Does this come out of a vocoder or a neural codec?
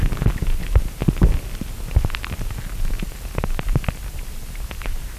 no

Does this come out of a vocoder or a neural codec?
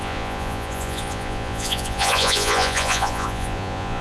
yes